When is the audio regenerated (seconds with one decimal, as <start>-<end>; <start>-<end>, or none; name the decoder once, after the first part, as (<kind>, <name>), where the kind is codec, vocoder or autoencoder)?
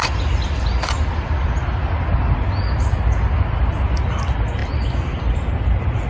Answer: none